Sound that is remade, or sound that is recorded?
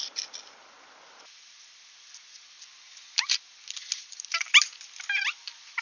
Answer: recorded